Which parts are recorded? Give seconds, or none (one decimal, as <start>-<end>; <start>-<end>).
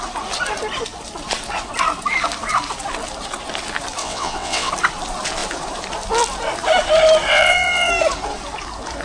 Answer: 0.0-4.0; 4.7-7.3; 7.9-9.0